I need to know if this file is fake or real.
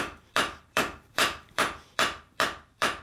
fake